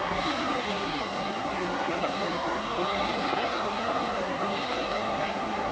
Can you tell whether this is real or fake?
fake